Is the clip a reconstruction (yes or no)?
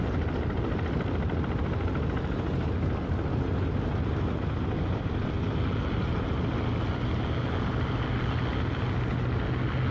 no